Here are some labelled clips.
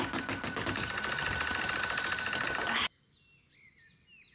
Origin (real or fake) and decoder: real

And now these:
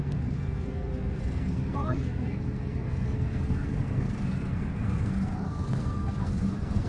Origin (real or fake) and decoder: fake, codec, SNAC